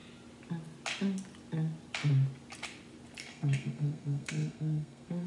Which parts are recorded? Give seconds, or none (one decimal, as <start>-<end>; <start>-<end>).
0.0-3.2